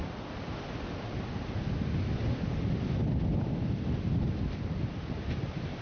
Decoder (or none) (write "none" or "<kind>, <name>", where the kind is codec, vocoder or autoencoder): none